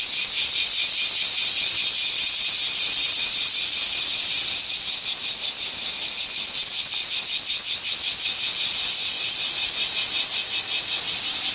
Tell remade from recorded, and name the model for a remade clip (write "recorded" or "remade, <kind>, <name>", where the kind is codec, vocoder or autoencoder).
recorded